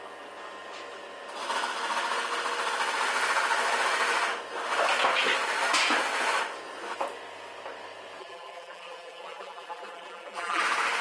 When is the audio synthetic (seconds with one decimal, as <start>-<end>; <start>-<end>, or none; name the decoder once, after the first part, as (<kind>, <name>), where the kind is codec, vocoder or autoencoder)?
8.2-10.6 (vocoder, BigVGAN v2)